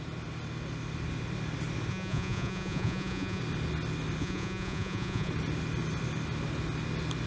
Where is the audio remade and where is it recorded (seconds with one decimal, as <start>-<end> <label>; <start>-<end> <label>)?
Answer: 0.0-1.9 recorded; 1.9-3.4 remade; 3.4-4.2 recorded; 4.2-5.3 remade; 5.3-7.3 recorded